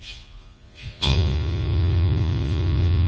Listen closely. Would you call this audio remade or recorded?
remade